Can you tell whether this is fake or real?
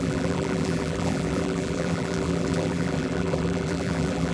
fake